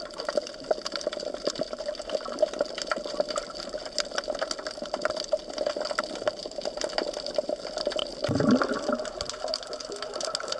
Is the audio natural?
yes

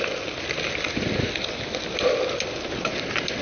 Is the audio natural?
yes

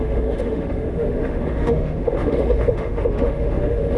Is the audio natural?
no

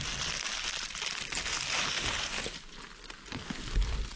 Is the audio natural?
yes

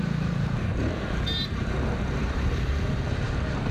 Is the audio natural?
no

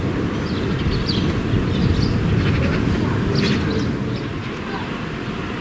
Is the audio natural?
yes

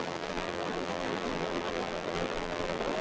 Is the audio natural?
no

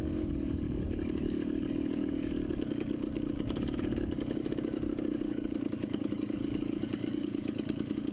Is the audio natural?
no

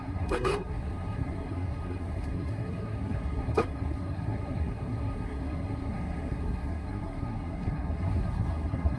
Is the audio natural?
no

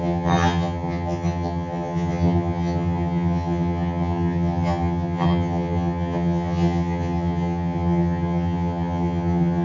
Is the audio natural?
no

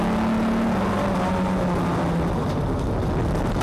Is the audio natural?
yes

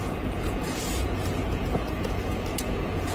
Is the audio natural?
no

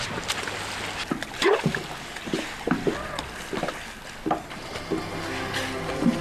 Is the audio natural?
yes